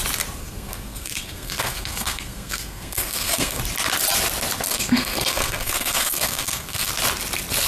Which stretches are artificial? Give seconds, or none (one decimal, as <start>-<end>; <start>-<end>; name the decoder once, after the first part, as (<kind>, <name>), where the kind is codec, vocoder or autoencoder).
0.4-3.6 (codec, SNAC); 4.7-6.9